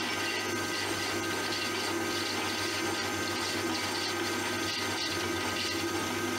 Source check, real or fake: real